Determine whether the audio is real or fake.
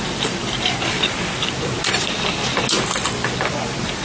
real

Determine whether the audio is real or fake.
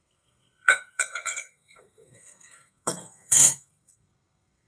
fake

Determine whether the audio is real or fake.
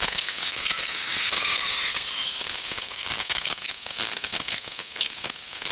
fake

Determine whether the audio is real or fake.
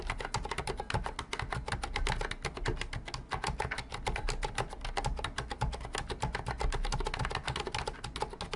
real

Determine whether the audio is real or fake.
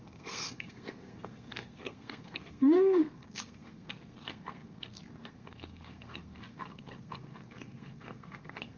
fake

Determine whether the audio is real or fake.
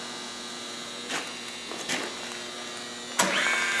real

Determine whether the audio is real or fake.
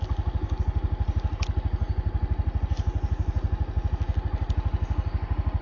real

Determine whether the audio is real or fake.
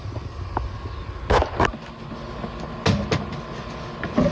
real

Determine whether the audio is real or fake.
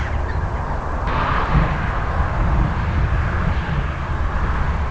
real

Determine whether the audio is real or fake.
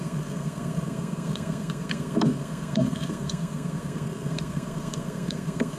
fake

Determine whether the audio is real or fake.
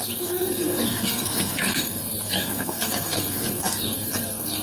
fake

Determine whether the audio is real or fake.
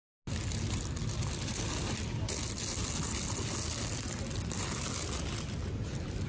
real